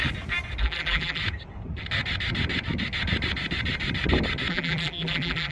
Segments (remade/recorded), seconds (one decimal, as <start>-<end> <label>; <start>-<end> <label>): 0.0-0.6 recorded; 0.6-1.2 remade; 1.2-4.5 recorded; 4.5-5.5 remade